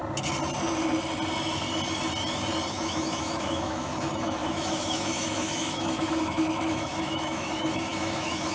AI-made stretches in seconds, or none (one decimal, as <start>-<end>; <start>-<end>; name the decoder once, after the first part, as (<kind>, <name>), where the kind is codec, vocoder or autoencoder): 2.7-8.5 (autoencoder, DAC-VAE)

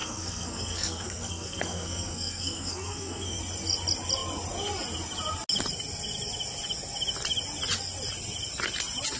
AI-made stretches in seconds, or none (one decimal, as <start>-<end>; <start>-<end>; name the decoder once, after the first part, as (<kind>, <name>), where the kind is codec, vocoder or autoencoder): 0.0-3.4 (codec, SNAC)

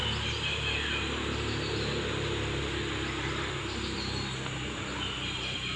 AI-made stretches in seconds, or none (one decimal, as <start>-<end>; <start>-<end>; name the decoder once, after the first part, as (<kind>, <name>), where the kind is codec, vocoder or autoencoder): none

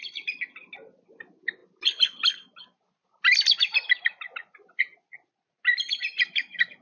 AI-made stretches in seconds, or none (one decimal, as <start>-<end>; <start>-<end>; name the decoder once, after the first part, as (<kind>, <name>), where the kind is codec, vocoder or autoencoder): none

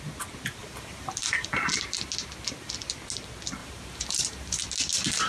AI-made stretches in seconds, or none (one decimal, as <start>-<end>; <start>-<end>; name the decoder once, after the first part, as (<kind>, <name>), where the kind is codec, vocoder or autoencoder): 0.6-1.8 (vocoder, BigVGAN v2); 3.6-4.6

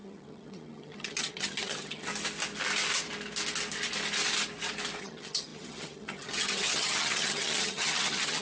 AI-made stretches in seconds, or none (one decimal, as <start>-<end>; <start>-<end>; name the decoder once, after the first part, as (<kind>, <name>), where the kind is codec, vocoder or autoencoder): 0.0-2.1 (vocoder, HiFi-GAN); 5.0-8.4

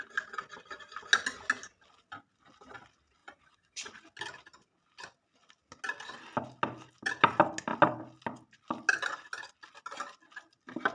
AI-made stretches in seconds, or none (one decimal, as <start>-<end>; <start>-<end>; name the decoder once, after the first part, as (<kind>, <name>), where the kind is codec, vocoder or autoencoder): 3.2-3.9 (vocoder, Vocos)